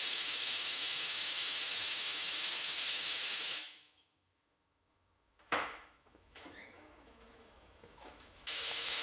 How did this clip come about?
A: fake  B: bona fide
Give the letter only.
A